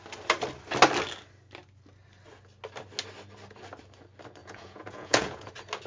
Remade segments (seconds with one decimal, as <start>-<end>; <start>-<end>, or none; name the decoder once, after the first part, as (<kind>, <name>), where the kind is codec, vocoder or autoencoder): 4.4-5.5 (vocoder, Vocos)